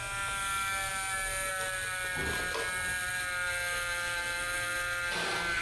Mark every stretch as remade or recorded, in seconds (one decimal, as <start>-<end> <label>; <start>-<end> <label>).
0.0-5.6 recorded